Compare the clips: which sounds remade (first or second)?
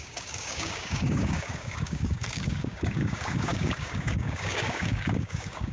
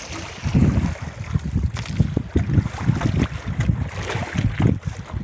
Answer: first